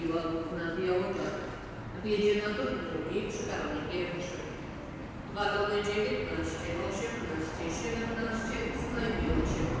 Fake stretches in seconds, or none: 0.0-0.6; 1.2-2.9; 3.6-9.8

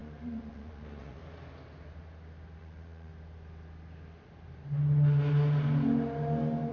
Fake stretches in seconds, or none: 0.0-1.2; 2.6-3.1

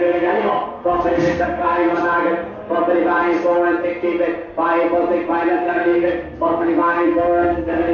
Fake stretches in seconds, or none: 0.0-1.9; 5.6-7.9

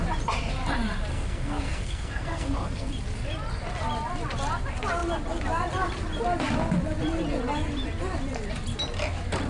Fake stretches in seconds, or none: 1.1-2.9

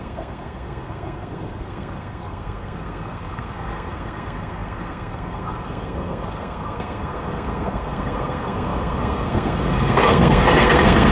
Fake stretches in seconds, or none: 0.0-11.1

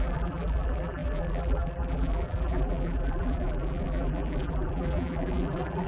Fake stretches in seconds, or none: 0.0-5.9

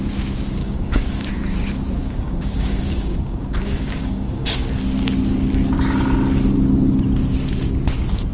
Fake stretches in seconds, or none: 0.6-1.3; 2.0-4.8